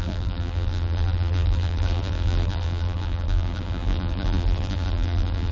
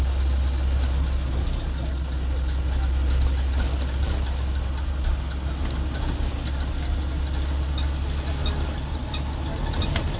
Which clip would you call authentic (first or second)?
second